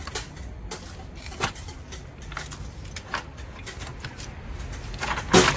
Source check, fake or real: real